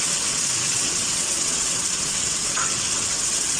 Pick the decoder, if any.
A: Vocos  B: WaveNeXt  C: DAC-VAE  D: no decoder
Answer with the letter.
B